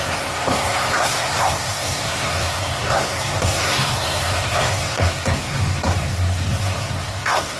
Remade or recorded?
remade